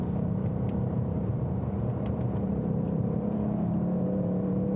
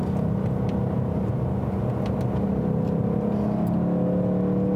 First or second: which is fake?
first